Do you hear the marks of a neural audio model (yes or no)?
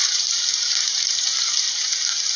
yes